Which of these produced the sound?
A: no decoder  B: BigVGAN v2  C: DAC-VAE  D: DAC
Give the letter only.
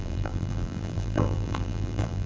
B